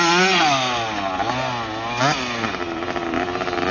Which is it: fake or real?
real